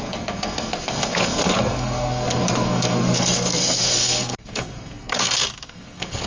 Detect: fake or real fake